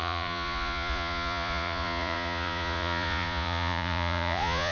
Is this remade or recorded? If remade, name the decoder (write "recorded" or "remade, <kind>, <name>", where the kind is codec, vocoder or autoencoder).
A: remade, vocoder, Vocos